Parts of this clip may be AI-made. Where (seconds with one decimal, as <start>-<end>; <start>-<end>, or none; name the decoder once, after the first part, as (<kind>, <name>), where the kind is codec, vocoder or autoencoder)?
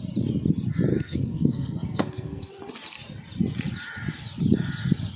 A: 0.9-2.5 (codec, SNAC)